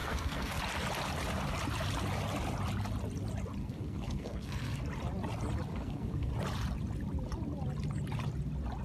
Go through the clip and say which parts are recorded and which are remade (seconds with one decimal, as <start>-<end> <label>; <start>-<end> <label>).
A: 0.0-0.6 remade; 0.6-3.6 recorded; 3.6-4.8 remade; 4.8-5.7 recorded; 5.7-6.3 remade; 6.3-8.8 recorded